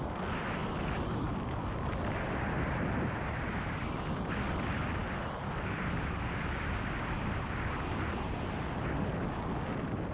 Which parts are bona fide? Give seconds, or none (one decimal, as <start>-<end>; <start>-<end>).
0.0-10.1